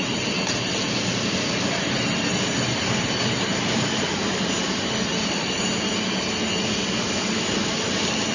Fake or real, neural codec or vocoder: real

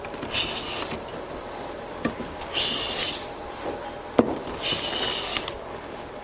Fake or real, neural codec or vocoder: real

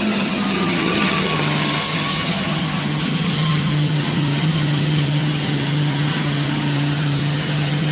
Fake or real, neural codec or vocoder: fake, vocoder, HiFi-GAN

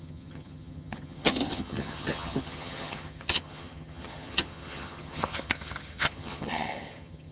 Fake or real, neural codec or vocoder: fake, vocoder, HiFi-GAN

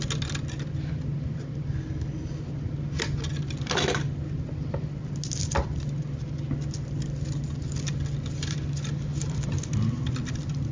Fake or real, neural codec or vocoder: real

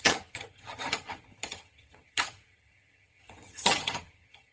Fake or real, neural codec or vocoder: fake, vocoder, HiFi-GAN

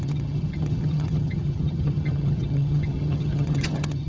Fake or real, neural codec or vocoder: fake, vocoder, HiFi-GAN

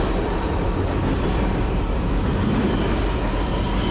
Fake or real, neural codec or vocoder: real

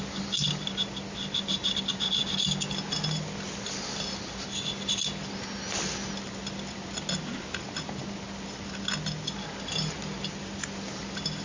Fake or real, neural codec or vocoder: real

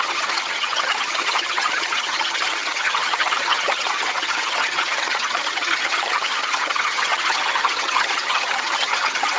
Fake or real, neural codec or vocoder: fake, vocoder, HiFi-GAN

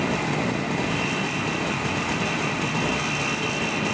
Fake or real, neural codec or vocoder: real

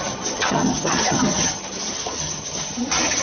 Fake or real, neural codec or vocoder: fake, vocoder, HiFi-GAN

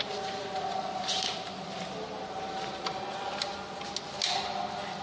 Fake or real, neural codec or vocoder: real